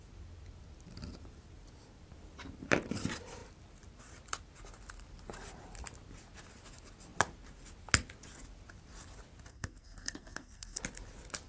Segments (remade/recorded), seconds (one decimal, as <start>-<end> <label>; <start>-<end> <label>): 0.0-9.5 recorded; 9.5-10.8 remade; 10.8-11.5 recorded